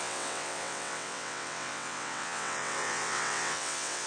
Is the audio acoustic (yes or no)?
no